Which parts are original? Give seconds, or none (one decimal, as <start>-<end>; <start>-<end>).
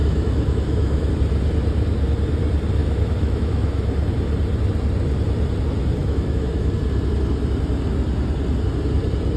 1.1-2.8; 3.9-6.0; 6.7-9.4